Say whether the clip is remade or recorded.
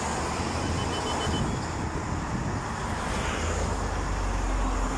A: recorded